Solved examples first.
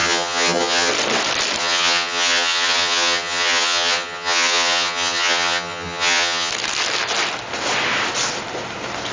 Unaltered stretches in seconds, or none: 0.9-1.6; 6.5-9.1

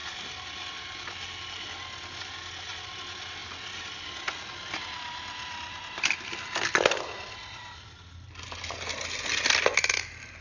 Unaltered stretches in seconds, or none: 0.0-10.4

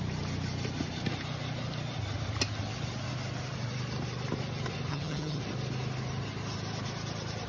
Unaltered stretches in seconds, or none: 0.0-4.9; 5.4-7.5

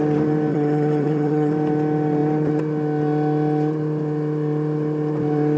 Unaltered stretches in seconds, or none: 0.0-0.5; 1.5-5.6

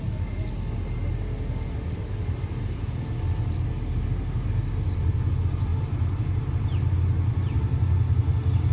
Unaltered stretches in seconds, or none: 0.0-8.7

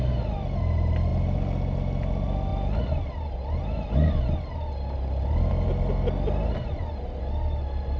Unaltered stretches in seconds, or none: 0.0-8.0

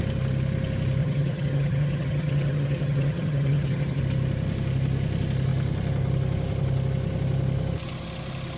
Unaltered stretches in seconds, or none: 0.0-1.0; 4.0-8.6